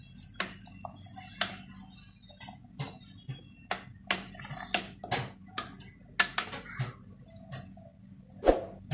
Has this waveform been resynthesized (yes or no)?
no